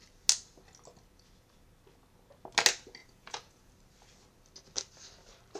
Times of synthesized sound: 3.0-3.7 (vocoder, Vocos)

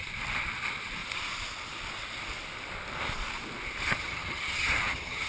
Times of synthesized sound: 3.9-5.3 (vocoder, HiFi-GAN)

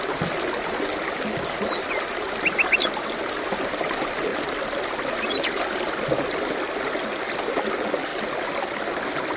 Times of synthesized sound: 8.1-8.6 (vocoder, BigVGAN v2)

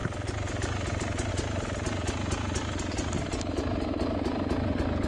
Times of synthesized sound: none